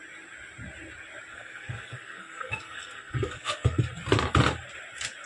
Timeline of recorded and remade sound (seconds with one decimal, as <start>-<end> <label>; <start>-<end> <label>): 0.0-1.3 recorded; 1.3-3.8 remade; 3.8-5.3 recorded